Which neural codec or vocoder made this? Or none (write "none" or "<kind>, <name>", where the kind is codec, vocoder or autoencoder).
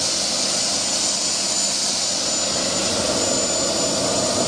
none